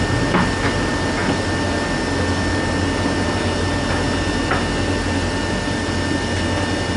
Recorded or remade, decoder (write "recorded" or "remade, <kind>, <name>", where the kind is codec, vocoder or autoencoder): recorded